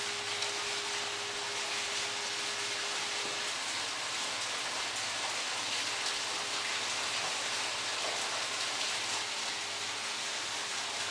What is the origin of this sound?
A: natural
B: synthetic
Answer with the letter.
A